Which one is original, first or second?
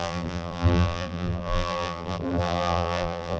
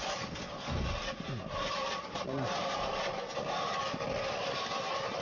second